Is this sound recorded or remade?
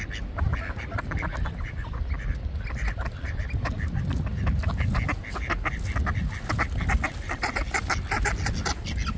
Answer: recorded